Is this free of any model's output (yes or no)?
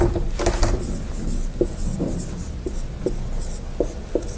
yes